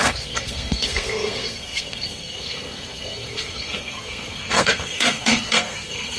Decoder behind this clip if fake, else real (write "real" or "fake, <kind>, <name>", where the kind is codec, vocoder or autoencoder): fake, codec, SNAC